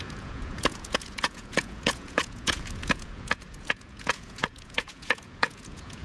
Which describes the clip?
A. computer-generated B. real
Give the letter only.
A